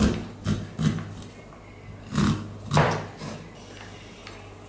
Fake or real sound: real